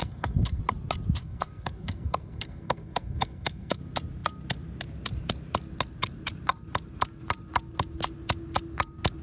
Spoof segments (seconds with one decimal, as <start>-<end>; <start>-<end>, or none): 0.0-0.6; 1.2-3.8